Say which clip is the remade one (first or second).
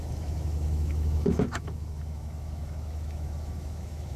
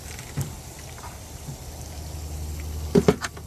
first